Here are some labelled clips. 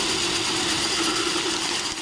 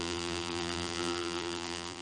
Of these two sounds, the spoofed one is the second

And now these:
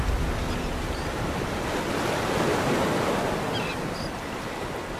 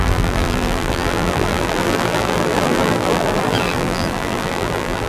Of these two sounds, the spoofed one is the second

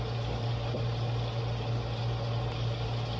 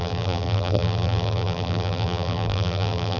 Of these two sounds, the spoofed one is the second